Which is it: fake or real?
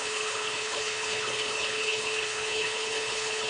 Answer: fake